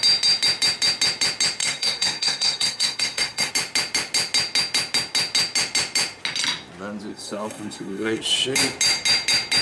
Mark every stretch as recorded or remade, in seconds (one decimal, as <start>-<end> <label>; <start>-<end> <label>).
0.0-1.6 recorded; 1.6-3.5 remade; 3.5-7.1 recorded; 7.1-8.2 remade; 8.2-9.6 recorded